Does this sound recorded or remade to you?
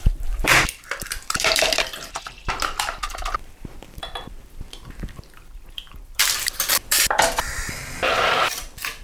remade